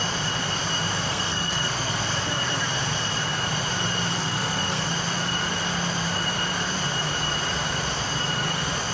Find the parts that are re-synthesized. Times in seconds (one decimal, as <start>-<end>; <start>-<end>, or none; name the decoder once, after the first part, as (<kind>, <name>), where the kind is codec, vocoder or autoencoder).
1.1-2.1 (codec, SNAC); 4.1-4.9

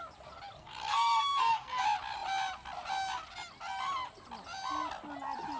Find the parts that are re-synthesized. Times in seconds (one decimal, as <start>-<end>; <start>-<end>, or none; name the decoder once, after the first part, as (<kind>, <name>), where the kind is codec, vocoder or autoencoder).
0.6-1.8 (codec, SNAC)

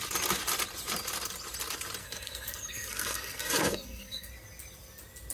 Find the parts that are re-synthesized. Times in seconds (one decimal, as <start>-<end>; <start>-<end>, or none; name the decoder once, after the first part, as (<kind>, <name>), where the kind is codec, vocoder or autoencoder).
2.0-4.3 (codec, SNAC)

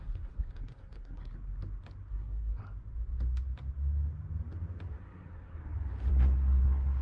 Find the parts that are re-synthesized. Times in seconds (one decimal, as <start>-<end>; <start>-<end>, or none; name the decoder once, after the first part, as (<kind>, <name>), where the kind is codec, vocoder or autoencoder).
0.0-1.3 (codec, SNAC); 2.1-2.6; 4.9-5.6; 6.1-7.0